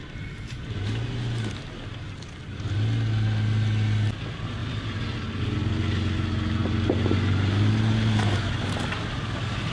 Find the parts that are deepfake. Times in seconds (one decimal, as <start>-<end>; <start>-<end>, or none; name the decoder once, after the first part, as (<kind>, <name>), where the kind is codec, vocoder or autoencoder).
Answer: none